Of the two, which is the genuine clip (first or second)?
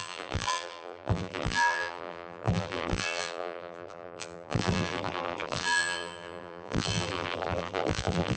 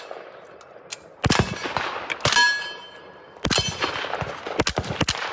second